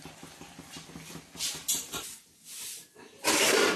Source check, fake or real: fake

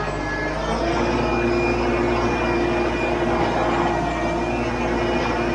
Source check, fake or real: real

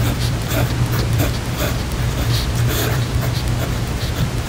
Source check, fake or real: fake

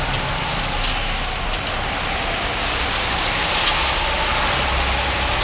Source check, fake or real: real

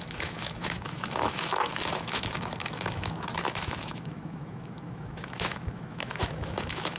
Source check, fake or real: fake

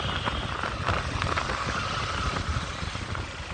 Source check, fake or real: real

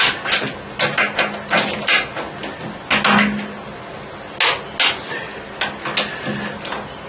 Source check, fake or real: real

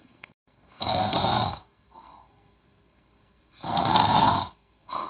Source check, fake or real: fake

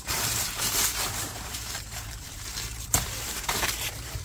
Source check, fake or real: fake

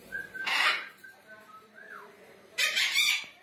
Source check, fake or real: fake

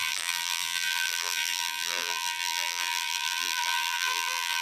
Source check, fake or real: fake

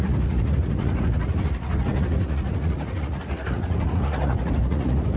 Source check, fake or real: fake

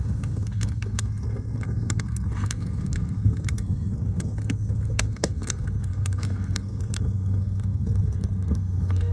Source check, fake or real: fake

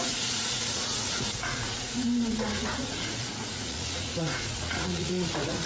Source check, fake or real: fake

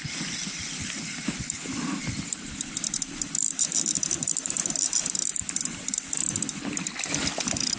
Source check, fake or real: fake